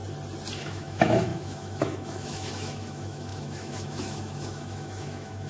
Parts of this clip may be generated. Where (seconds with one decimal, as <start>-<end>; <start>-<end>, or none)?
0.6-5.5